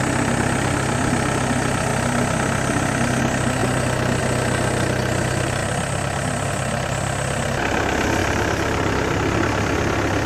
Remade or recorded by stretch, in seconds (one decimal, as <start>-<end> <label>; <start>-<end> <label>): 0.0-8.2 recorded; 8.2-9.1 remade; 9.1-10.3 recorded